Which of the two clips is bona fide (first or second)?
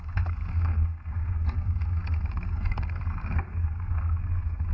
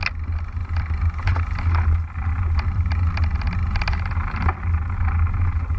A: second